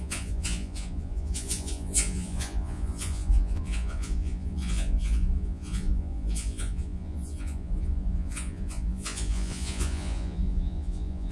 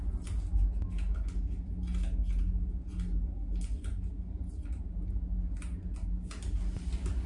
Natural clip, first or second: second